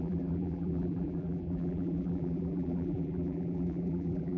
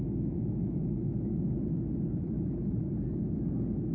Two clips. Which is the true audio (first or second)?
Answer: second